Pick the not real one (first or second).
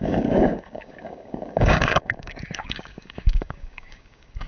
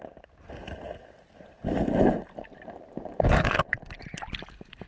first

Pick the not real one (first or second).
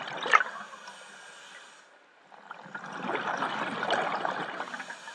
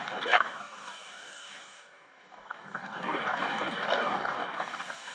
second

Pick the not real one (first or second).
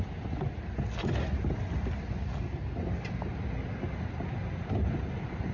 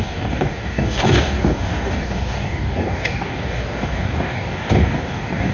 second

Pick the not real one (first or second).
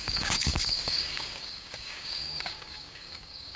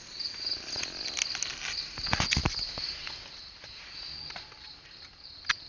first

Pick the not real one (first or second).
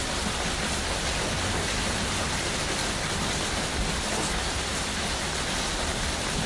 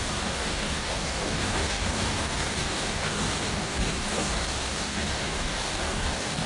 second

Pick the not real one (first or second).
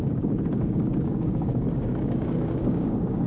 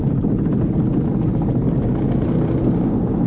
first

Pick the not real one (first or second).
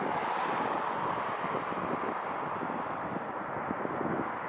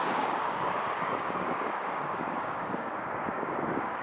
second